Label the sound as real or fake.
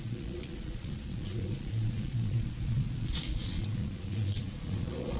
fake